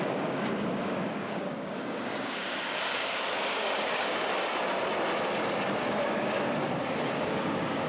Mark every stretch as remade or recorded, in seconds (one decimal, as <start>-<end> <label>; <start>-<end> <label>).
0.0-4.4 remade; 4.4-5.9 recorded; 5.9-7.9 remade